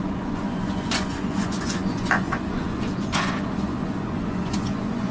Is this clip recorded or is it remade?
remade